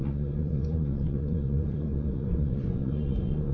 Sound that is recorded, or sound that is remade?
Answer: remade